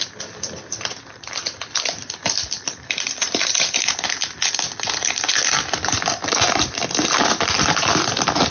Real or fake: fake